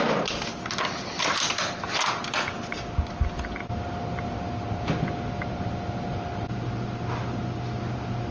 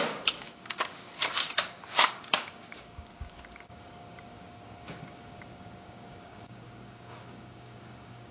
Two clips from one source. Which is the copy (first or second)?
second